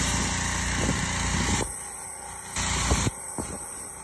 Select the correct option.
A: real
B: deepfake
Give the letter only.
A